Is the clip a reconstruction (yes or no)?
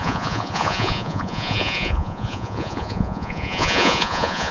yes